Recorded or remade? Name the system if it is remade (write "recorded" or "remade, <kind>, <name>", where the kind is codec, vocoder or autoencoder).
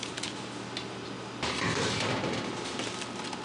recorded